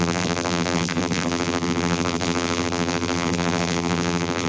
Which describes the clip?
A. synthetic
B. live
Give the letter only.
A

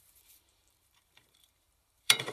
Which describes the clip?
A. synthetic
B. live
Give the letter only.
A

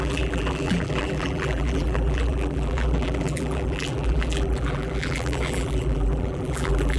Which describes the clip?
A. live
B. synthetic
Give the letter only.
B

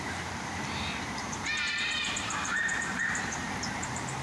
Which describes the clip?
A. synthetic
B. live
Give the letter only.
A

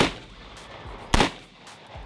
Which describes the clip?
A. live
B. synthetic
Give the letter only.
A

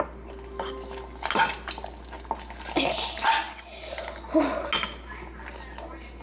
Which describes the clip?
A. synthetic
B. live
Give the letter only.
B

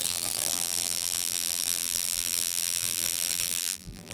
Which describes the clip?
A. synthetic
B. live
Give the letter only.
A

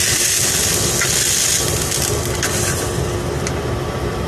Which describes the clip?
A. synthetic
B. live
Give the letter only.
B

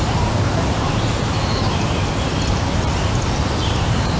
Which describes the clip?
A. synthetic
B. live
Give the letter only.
A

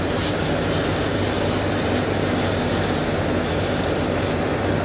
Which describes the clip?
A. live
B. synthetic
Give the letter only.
A